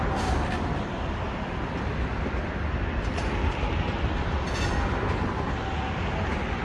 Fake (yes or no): no